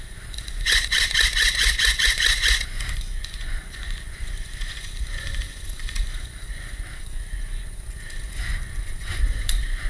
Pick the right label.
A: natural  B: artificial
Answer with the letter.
B